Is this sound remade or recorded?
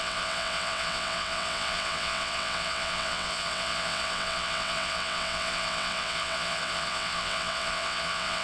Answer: remade